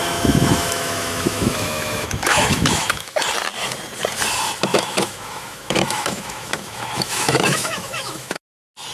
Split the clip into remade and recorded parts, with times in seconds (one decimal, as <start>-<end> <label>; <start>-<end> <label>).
0.0-3.2 remade; 3.2-4.7 recorded; 4.7-8.4 remade; 8.4-8.9 recorded